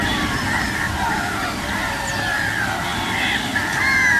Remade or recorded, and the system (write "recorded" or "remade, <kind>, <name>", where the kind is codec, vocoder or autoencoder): recorded